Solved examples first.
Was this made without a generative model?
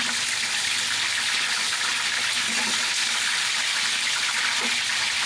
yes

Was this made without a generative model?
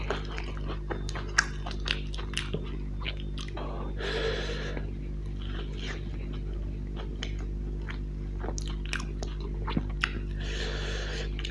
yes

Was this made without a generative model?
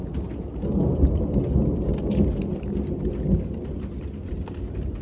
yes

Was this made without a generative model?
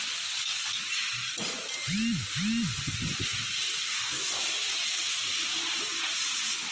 yes